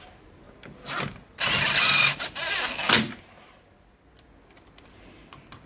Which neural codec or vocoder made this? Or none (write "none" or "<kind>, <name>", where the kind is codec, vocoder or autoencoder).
none